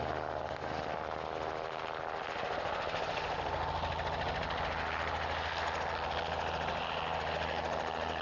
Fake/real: real